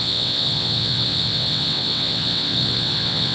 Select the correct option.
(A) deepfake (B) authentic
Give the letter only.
A